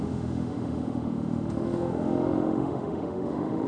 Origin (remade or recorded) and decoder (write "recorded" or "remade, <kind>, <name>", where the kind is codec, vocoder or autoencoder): remade, autoencoder, DAC-VAE